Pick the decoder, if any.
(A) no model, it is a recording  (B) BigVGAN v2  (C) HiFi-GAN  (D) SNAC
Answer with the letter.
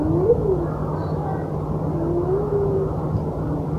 A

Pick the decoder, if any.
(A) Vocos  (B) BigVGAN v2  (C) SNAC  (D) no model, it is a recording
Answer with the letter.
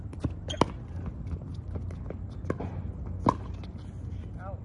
D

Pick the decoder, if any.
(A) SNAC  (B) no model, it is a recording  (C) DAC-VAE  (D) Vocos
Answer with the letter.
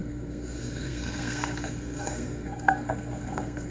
A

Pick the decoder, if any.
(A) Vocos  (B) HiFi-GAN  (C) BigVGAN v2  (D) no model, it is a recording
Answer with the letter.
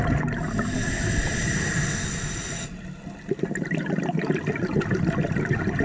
D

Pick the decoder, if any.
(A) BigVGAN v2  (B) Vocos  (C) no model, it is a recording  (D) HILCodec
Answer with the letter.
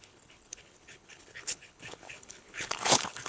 D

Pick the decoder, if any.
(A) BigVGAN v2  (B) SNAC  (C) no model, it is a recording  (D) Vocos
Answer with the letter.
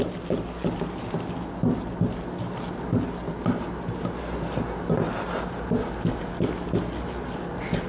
C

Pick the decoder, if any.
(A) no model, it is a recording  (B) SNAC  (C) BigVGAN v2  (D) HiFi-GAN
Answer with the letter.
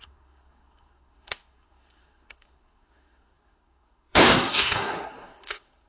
B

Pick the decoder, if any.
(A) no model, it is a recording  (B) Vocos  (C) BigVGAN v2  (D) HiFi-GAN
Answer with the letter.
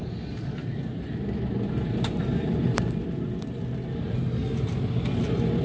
A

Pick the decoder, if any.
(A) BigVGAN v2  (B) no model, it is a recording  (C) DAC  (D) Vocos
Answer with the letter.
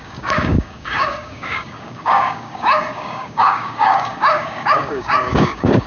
C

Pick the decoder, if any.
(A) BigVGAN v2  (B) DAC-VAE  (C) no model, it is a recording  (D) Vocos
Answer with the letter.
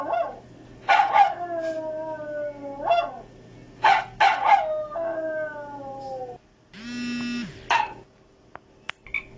C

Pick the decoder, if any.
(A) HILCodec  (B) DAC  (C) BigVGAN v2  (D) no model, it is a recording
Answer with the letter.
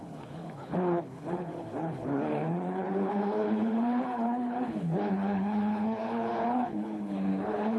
A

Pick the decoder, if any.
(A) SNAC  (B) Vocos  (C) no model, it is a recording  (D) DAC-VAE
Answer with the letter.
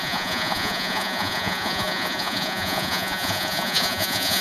B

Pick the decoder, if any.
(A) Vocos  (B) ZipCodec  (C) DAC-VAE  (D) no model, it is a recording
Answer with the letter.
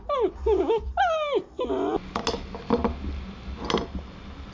D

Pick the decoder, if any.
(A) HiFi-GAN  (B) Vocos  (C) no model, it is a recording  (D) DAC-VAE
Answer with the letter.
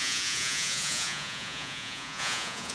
B